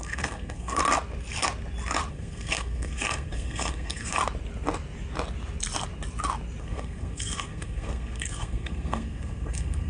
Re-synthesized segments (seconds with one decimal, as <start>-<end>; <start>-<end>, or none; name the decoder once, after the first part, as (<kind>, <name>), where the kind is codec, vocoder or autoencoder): 0.0-0.8 (codec, SNAC); 2.1-4.2; 6.6-9.9